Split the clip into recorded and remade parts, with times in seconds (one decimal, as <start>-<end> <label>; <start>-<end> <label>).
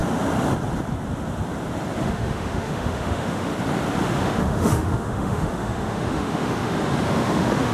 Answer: 0.0-2.0 recorded; 2.0-3.5 remade; 3.5-4.0 recorded; 4.0-7.7 remade